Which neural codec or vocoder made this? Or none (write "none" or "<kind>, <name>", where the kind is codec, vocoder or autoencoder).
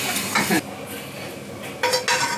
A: none